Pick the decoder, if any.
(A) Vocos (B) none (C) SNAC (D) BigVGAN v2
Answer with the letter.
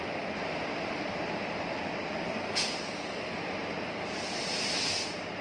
B